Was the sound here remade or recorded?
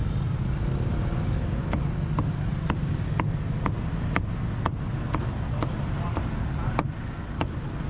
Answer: recorded